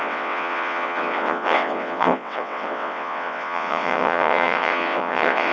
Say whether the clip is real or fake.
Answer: fake